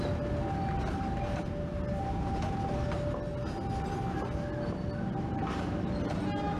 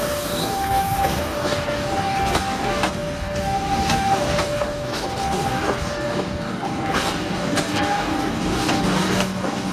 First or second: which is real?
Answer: first